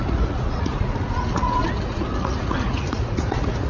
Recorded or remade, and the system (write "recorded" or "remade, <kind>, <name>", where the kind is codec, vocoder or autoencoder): remade, vocoder, Vocos